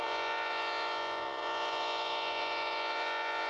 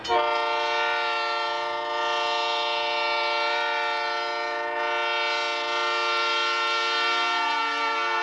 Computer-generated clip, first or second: first